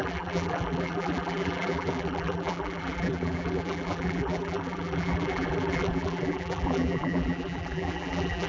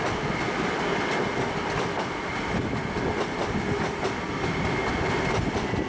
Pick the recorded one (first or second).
second